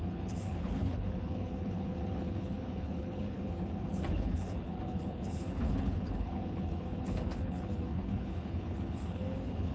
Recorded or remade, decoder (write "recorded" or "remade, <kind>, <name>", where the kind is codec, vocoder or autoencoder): remade, codec, HILCodec